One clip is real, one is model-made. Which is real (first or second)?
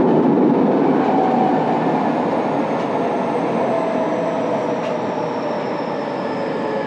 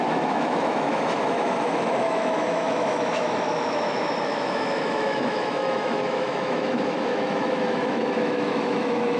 first